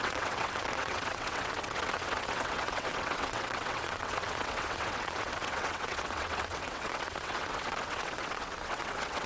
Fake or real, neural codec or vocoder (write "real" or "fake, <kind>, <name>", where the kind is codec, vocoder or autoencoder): fake, vocoder, WaveNeXt